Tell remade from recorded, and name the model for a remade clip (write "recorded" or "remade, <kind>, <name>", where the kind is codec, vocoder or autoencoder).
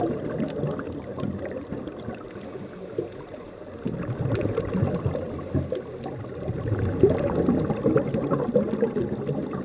recorded